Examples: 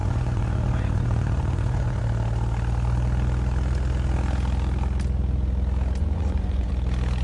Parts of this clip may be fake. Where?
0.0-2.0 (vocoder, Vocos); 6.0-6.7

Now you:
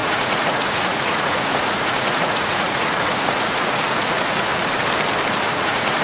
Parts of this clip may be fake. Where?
0.0-4.5 (vocoder, Vocos); 5.5-6.0

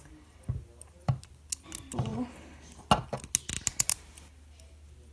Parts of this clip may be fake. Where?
none

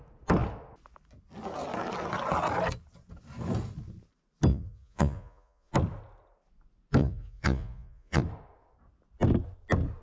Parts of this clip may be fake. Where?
4.5-5.7 (vocoder, Vocos); 7.0-8.2